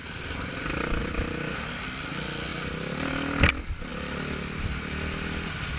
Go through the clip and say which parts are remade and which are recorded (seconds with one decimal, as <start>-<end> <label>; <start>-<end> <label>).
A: 0.0-5.8 recorded